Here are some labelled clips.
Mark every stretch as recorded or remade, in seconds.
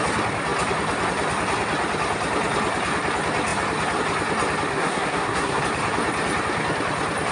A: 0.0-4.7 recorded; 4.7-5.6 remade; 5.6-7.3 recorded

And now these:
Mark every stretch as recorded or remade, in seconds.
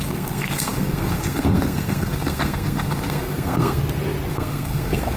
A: 0.0-3.8 remade; 3.8-4.3 recorded; 4.3-5.2 remade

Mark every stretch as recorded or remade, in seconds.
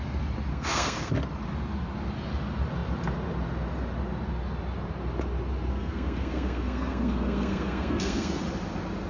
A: 0.0-0.5 recorded; 0.5-1.1 remade; 1.1-5.7 recorded; 5.7-8.4 remade; 8.4-9.1 recorded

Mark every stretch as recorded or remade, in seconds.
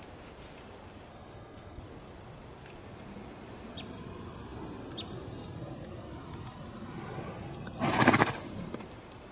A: 0.0-1.1 recorded; 1.1-1.8 remade; 1.8-9.3 recorded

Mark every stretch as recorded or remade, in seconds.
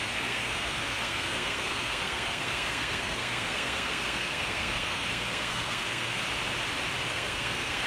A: 0.0-6.2 remade; 6.2-7.1 recorded; 7.1-7.9 remade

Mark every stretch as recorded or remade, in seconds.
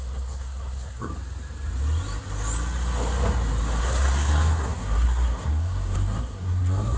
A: 0.0-1.1 remade; 1.1-3.8 recorded; 3.8-7.0 remade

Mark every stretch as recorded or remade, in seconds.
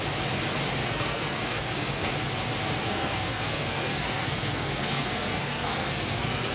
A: 0.0-0.8 recorded; 0.8-2.1 remade; 2.1-2.8 recorded; 2.8-6.5 remade